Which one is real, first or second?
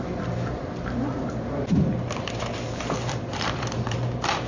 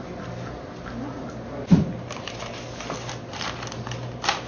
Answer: second